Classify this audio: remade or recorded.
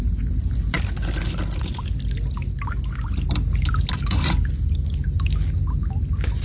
recorded